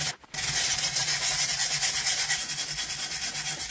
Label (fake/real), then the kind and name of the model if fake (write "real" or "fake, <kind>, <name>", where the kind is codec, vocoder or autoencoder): real